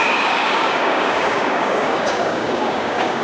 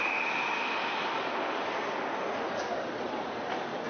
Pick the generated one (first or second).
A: first